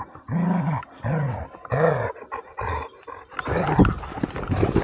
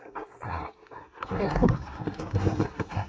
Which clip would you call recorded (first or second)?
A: first